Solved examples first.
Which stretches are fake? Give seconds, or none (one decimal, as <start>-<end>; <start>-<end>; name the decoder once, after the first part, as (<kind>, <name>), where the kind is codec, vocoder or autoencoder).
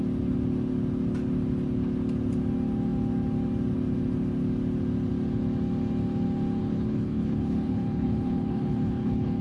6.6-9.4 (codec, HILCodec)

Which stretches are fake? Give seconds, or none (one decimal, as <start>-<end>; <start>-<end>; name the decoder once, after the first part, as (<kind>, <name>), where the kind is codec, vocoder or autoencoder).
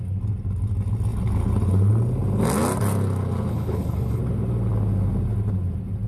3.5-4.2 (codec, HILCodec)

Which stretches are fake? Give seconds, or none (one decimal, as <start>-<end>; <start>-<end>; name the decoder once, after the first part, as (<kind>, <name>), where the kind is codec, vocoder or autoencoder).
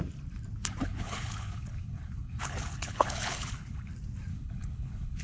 0.8-3.9 (codec, HILCodec); 4.3-5.2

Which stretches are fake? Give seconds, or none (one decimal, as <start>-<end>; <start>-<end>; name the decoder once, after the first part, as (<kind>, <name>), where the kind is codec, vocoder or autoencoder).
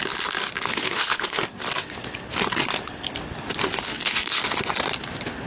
0.7-1.4 (codec, HILCodec); 3.9-4.4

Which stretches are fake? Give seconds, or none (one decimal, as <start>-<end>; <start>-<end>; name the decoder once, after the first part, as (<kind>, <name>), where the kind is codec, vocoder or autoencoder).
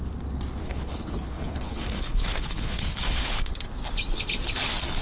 0.6-3.5 (codec, HILCodec)